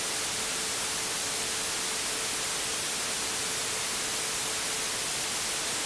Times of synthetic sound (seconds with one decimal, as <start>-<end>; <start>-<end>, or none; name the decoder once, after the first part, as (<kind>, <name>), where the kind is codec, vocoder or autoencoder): none